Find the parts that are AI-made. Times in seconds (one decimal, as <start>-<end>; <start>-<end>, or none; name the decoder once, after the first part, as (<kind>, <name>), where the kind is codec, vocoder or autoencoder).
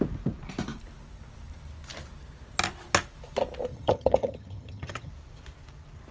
3.7-5.1 (vocoder, HiFi-GAN)